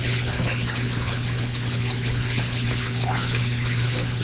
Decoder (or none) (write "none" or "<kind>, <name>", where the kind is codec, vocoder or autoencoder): codec, HILCodec